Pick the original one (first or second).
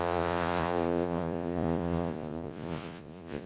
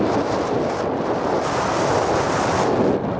second